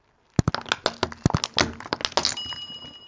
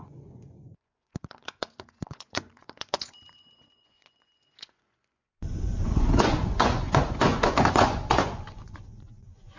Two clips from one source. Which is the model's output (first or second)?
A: second